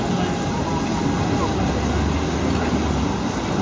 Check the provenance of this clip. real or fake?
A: real